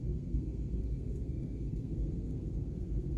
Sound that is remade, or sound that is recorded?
remade